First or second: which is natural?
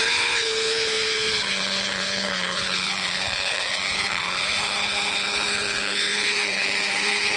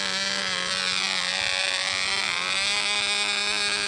second